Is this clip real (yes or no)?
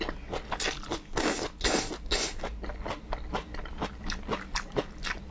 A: yes